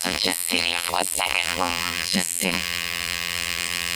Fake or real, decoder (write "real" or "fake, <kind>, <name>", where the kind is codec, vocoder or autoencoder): fake, vocoder, BigVGAN v2